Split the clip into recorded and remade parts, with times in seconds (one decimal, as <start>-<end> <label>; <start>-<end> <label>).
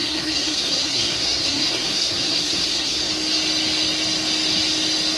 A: 0.0-3.1 remade; 3.1-5.2 recorded